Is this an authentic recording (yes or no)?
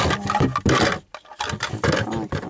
yes